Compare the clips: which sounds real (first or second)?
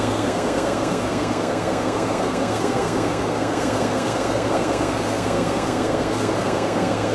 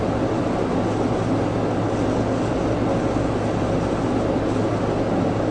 second